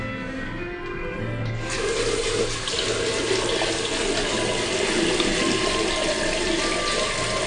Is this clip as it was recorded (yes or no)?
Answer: yes